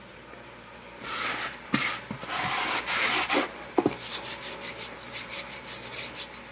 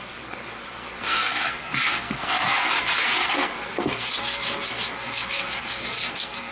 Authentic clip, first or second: first